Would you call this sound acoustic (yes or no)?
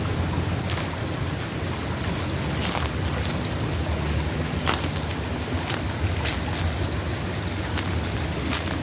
yes